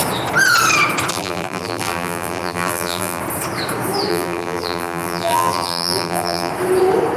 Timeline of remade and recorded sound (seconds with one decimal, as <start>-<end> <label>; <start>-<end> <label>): 0.0-1.1 recorded; 1.1-3.2 remade; 3.2-4.1 recorded; 4.1-6.5 remade; 6.5-7.2 recorded